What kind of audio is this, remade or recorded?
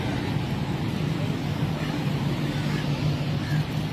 recorded